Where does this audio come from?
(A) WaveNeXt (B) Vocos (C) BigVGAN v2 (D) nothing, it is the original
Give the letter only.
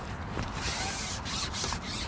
C